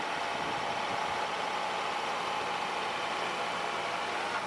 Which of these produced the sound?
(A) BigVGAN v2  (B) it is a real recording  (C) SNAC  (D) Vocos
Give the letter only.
B